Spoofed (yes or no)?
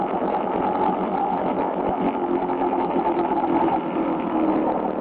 no